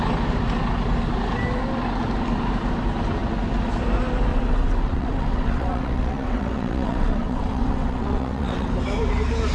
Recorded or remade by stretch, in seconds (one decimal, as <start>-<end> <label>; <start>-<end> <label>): 0.0-4.3 recorded; 4.3-8.7 remade; 8.7-9.5 recorded